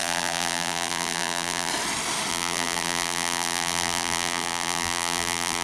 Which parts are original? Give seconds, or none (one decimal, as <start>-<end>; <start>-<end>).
1.7-2.3